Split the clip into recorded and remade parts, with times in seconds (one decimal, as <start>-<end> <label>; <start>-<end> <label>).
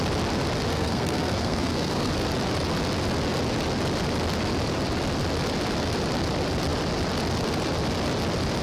0.0-0.7 recorded; 0.7-2.1 remade; 2.1-8.6 recorded